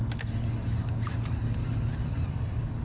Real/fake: real